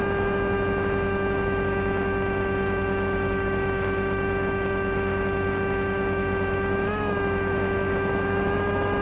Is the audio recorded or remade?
remade